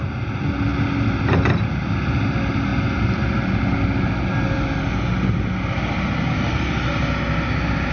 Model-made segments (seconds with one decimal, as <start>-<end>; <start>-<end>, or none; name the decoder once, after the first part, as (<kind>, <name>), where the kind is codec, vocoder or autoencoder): none